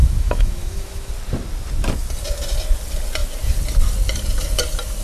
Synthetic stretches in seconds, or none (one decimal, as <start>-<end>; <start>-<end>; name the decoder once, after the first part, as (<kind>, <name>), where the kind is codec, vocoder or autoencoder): 0.0-1.1 (autoencoder, DAC-VAE)